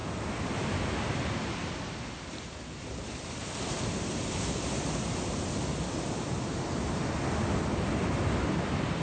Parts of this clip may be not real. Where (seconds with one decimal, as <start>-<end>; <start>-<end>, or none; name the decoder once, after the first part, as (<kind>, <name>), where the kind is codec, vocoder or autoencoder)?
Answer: none